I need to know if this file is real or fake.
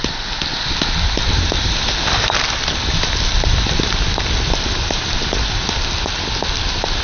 real